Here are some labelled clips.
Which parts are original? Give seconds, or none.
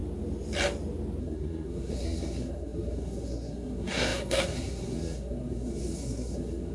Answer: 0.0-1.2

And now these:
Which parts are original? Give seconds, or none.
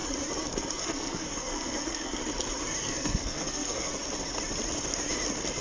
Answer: 0.0-0.8; 2.2-2.8; 3.9-5.6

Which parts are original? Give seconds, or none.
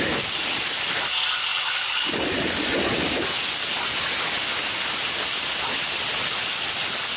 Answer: 0.0-7.2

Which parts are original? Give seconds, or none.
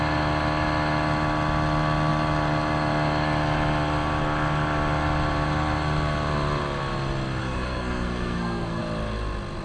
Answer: 0.0-7.4; 8.8-9.6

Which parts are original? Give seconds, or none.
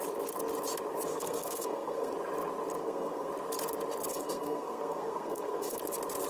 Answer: 0.0-1.1; 2.1-2.8; 3.3-4.1; 5.8-6.3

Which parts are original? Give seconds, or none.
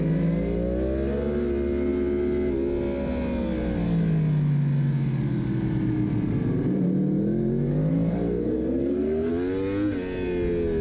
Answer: 0.0-7.9; 9.3-10.8